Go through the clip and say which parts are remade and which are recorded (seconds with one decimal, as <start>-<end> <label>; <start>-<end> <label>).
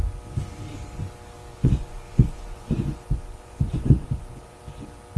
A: 0.0-1.5 recorded; 1.5-4.6 remade; 4.6-5.2 recorded